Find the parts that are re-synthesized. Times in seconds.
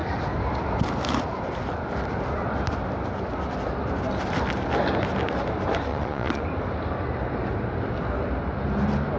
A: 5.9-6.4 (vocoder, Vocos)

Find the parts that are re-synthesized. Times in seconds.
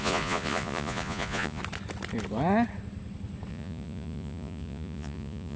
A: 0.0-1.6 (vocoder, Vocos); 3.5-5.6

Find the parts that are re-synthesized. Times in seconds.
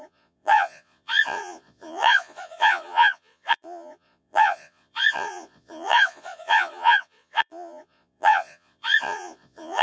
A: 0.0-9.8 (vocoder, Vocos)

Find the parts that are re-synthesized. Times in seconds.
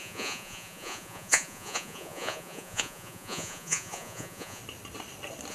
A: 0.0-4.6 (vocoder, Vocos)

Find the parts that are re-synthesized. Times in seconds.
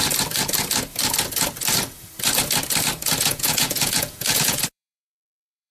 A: 3.2-5.7 (vocoder, Vocos)